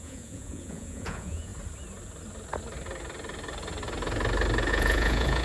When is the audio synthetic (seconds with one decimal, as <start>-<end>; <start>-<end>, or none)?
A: 0.0-1.5; 4.7-5.4